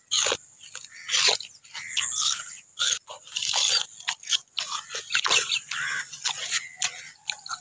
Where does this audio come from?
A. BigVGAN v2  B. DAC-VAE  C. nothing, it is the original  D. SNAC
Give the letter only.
C